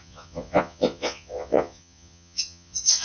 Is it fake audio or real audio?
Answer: fake